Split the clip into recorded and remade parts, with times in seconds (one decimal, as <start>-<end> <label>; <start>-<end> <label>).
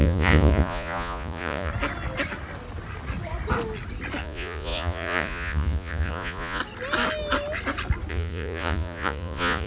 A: 0.0-1.7 remade; 1.7-4.2 recorded; 4.2-6.6 remade; 6.6-8.1 recorded; 8.1-9.7 remade